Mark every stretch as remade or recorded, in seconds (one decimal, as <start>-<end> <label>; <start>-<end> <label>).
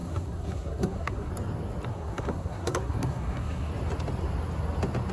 0.0-1.3 remade; 1.3-1.9 recorded; 1.9-3.7 remade; 3.7-5.1 recorded